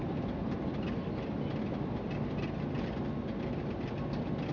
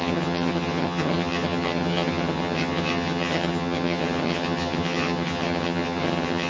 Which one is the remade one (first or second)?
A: second